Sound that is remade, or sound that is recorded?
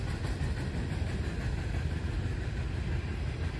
recorded